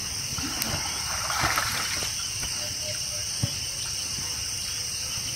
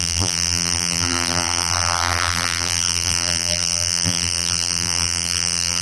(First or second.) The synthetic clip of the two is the second